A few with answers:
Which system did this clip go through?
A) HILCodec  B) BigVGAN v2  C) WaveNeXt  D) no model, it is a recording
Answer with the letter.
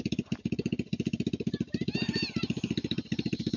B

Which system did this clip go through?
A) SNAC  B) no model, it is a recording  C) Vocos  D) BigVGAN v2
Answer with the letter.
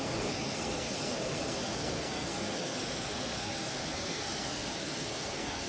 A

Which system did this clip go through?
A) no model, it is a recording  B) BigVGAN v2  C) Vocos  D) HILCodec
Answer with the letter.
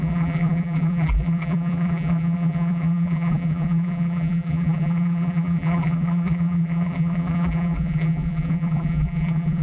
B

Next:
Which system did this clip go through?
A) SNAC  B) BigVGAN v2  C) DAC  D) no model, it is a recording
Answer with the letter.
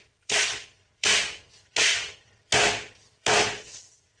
B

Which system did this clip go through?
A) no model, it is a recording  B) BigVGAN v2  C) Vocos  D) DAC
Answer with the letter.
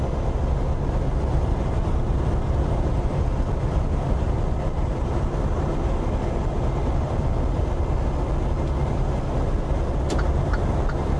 A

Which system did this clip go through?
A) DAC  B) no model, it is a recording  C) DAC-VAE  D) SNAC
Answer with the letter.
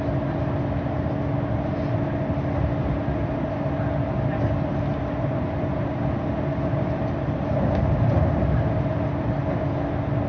B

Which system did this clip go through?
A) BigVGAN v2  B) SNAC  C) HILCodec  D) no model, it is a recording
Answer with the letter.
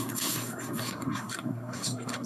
B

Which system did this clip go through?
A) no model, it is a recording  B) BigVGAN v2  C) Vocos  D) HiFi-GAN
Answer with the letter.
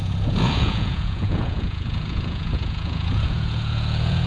C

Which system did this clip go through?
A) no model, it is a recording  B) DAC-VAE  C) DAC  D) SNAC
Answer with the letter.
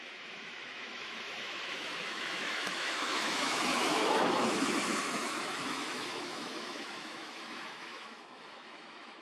B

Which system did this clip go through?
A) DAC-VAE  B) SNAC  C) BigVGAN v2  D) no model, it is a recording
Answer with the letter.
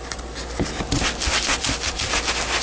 D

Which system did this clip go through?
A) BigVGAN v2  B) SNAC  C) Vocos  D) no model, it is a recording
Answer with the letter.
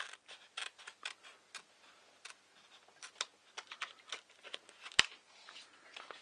D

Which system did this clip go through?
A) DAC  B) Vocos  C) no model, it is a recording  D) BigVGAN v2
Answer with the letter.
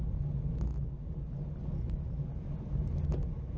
C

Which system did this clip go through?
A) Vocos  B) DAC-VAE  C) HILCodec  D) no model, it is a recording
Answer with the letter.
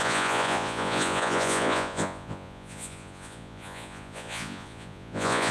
A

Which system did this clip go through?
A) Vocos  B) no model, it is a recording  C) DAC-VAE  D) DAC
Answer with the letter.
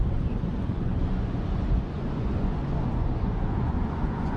A